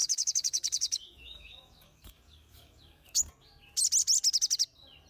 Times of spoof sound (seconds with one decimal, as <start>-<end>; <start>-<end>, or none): 0.0-3.1